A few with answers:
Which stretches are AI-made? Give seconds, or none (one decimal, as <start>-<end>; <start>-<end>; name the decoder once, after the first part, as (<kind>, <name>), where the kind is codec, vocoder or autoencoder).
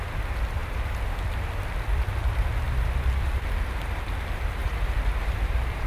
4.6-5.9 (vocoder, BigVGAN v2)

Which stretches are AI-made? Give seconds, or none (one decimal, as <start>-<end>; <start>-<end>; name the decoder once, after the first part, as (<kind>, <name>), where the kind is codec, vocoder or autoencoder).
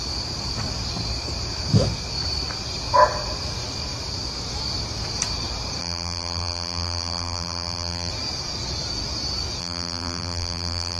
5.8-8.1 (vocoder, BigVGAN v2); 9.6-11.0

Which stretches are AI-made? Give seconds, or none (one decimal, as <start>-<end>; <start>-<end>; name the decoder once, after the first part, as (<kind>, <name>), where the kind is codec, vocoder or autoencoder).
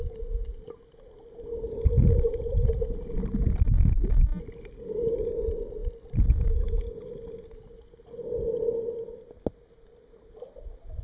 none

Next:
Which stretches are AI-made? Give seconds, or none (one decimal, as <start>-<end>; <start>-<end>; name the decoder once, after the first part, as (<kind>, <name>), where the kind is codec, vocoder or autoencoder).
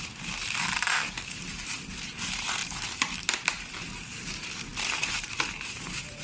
0.0-6.2 (vocoder, BigVGAN v2)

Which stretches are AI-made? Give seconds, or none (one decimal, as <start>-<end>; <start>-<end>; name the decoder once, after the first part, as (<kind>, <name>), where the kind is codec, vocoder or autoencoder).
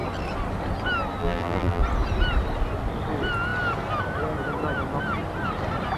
1.2-1.8 (vocoder, BigVGAN v2)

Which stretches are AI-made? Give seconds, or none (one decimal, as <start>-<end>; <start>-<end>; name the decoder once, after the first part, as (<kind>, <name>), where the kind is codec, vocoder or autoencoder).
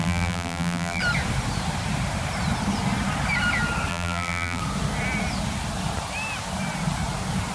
0.0-1.0 (vocoder, BigVGAN v2); 3.9-4.6